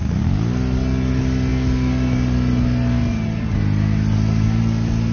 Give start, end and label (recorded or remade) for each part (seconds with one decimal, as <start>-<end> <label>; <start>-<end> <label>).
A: 0.0-5.1 recorded